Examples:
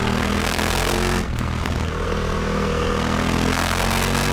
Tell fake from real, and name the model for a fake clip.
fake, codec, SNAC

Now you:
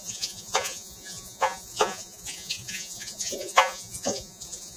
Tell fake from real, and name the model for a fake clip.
fake, vocoder, Vocos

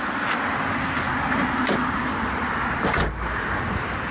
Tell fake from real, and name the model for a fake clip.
real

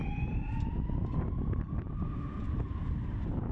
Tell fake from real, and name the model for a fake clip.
real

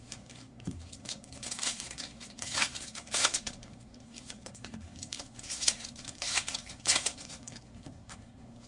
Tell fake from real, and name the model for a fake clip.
fake, codec, SNAC